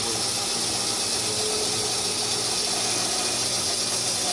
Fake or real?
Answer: real